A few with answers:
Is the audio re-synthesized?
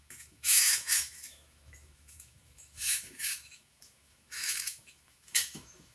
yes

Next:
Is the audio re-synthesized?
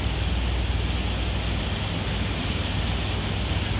no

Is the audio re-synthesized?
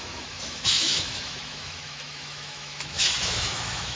yes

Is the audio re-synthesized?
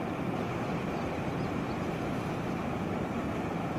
no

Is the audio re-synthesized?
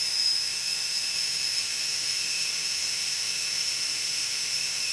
yes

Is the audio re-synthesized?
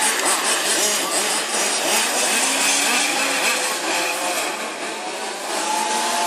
no